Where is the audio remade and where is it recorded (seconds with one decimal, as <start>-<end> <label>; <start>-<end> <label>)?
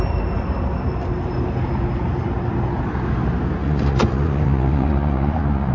0.0-3.6 recorded; 3.6-5.7 remade